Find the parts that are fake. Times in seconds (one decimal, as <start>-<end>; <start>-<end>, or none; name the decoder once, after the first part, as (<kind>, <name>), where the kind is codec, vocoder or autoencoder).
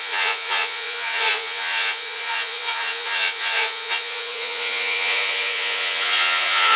0.0-6.8 (vocoder, Vocos)